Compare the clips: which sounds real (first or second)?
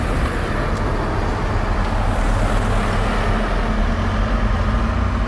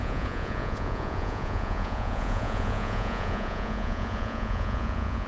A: first